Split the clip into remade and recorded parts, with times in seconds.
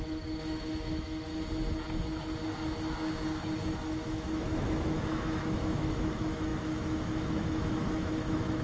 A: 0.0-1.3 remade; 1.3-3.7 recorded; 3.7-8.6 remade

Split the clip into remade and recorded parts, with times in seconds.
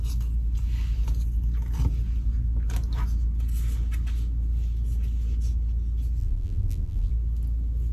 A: 0.0-6.2 recorded; 6.2-7.1 remade; 7.1-7.9 recorded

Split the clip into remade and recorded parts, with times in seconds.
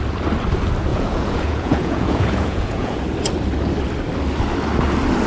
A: 0.0-0.9 recorded; 0.9-3.0 remade; 3.0-5.3 recorded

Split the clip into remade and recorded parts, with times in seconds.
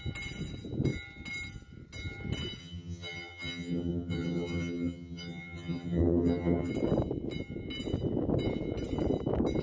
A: 0.0-2.6 recorded; 2.6-6.7 remade; 6.7-9.6 recorded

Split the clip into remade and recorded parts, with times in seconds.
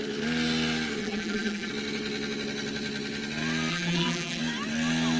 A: 0.0-1.0 recorded; 1.0-1.7 remade; 1.7-3.7 recorded; 3.7-4.4 remade; 4.4-5.2 recorded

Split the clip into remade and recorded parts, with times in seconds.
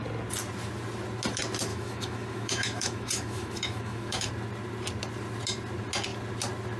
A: 0.0-1.7 recorded; 1.7-4.3 remade; 4.3-6.8 recorded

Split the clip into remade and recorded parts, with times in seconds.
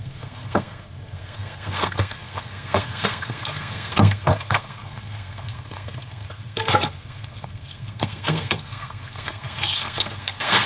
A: 0.0-10.7 remade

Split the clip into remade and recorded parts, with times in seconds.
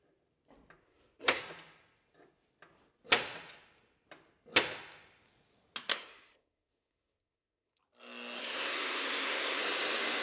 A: 0.0-0.8 recorded; 0.8-1.4 remade; 1.4-5.9 recorded; 5.9-7.8 remade; 7.8-8.4 recorded; 8.4-9.6 remade; 9.6-10.2 recorded